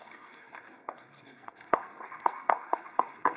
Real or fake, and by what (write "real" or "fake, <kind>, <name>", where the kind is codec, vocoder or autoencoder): fake, codec, SNAC